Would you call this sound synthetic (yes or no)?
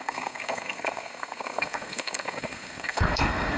yes